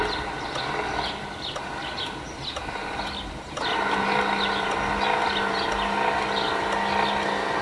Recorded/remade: recorded